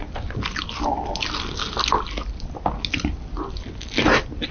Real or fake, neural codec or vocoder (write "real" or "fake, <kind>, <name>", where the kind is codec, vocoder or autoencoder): real